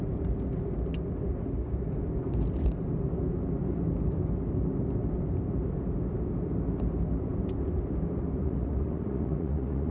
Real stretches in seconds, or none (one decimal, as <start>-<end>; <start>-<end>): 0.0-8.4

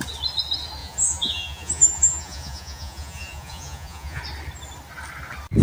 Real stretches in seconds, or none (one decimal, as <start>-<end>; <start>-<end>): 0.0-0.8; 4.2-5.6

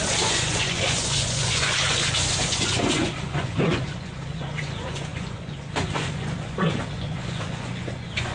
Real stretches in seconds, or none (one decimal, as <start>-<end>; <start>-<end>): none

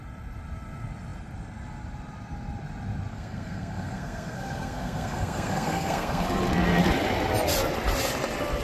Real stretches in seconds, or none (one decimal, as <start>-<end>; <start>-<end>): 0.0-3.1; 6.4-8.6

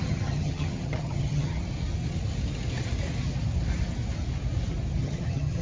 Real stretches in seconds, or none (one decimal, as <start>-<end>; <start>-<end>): 1.6-5.0

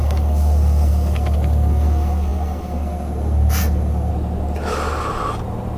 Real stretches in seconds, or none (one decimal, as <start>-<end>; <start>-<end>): 4.1-5.8

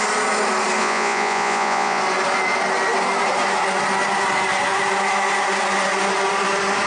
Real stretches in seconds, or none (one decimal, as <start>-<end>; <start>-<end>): 0.0-0.8; 2.0-6.9

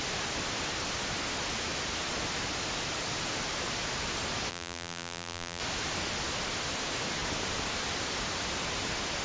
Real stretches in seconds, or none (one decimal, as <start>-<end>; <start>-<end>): 0.0-4.5; 5.6-9.2